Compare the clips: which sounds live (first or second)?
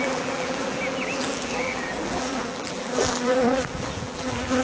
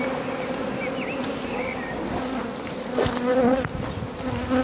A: second